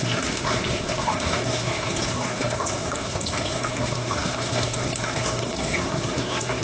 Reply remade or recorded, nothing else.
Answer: remade